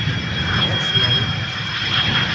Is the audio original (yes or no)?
yes